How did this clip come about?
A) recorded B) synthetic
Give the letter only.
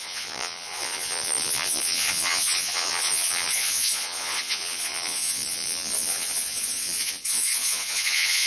B